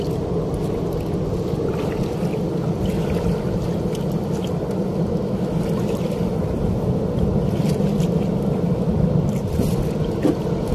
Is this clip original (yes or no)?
yes